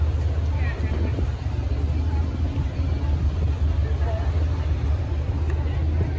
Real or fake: real